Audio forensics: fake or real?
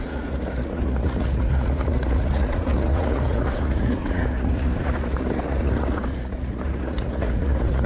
fake